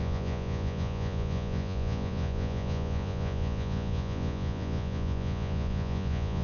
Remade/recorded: remade